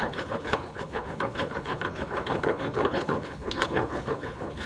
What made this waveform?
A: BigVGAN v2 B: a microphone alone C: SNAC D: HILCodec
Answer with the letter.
D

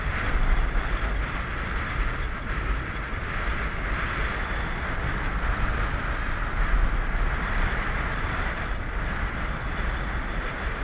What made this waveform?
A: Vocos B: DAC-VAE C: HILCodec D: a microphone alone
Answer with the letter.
D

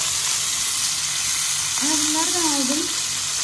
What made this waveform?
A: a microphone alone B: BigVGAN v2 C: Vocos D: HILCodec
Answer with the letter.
A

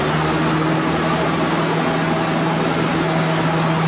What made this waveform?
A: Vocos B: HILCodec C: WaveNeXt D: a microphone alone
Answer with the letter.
D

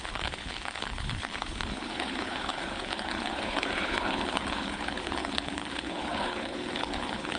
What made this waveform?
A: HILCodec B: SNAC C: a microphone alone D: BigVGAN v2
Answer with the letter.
A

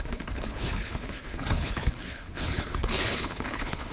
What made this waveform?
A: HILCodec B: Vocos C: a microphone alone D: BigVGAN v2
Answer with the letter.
A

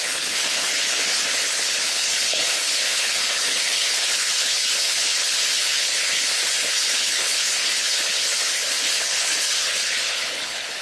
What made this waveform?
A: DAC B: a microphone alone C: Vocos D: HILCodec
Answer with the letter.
D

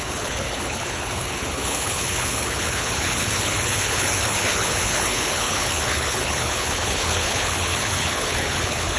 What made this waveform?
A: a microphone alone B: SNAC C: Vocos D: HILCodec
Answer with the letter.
D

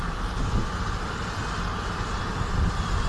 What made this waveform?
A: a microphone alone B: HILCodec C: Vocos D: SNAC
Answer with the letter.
A